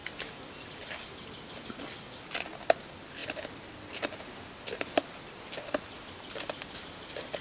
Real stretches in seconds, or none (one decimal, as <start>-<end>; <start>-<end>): 0.0-7.4